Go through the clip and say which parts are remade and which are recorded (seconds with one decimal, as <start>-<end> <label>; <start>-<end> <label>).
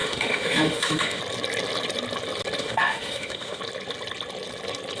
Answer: 0.0-1.2 remade; 1.2-2.6 recorded; 2.6-3.6 remade; 3.6-5.0 recorded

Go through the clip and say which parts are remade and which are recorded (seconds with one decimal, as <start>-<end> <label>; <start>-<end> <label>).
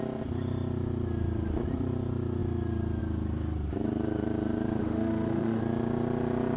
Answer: 0.0-4.8 recorded; 4.8-5.6 remade; 5.6-6.6 recorded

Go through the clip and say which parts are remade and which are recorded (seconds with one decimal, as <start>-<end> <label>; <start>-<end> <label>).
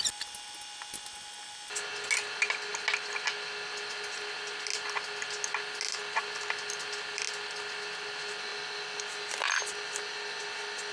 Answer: 0.0-10.9 recorded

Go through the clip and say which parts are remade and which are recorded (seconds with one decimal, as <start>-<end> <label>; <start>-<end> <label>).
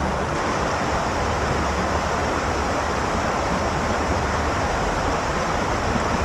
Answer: 0.0-2.2 recorded; 2.2-5.8 remade; 5.8-6.2 recorded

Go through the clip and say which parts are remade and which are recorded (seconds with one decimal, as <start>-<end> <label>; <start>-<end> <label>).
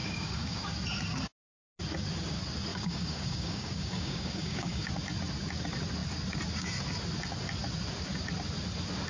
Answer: 0.0-0.7 remade; 0.7-2.7 recorded; 2.7-4.9 remade; 4.9-9.1 recorded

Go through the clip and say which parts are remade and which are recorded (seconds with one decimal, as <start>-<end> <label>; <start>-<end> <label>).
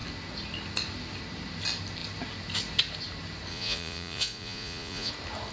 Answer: 0.0-3.5 recorded; 3.5-5.1 remade; 5.1-5.5 recorded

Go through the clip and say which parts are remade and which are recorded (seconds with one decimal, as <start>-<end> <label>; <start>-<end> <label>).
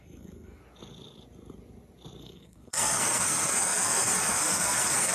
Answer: 0.0-0.6 remade; 0.6-2.2 recorded; 2.2-5.1 remade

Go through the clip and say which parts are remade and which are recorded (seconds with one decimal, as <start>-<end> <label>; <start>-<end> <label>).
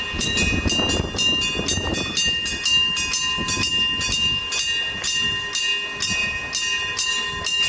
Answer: 0.0-7.7 recorded